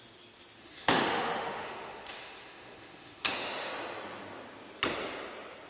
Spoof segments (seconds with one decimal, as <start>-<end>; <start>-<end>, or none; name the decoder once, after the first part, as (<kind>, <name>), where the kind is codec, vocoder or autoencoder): 0.6-3.7 (autoencoder, DAC-VAE)